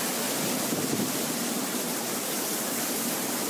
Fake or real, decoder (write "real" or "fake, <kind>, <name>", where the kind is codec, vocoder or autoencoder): real